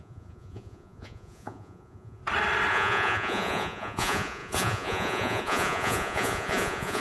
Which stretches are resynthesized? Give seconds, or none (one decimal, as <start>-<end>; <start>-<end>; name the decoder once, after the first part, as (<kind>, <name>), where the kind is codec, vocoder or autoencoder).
0.0-2.2 (vocoder, Vocos); 2.7-7.0